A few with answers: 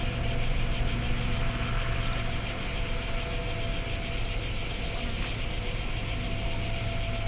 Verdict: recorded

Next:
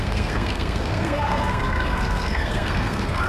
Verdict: remade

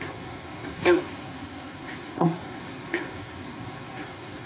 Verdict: remade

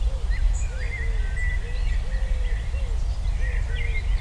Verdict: recorded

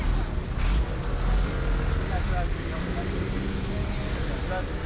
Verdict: recorded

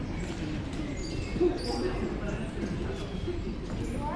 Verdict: recorded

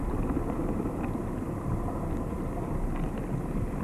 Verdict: recorded